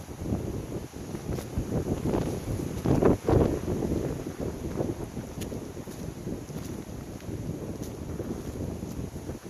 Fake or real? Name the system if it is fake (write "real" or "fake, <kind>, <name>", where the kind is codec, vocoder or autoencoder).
real